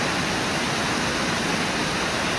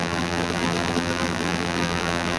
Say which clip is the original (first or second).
first